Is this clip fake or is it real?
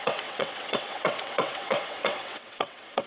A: fake